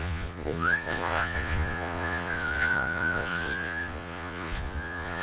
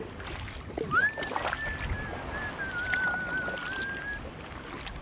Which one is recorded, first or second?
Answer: second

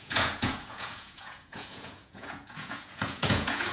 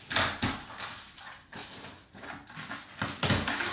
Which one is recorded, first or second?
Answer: second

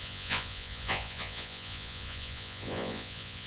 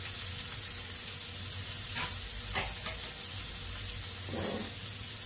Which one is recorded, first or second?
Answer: second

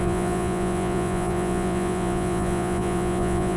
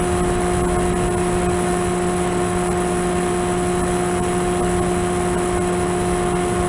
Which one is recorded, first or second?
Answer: second